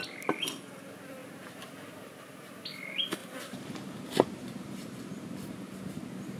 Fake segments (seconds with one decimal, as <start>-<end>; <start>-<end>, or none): 1.2-2.5; 3.2-3.8